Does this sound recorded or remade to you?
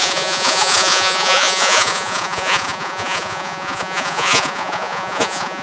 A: remade